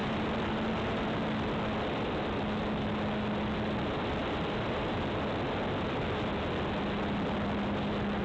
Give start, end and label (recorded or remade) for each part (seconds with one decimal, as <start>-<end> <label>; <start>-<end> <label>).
0.0-0.7 remade; 0.7-4.2 recorded; 4.2-4.9 remade; 4.9-8.2 recorded